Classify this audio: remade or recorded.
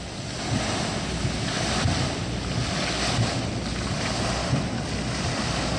recorded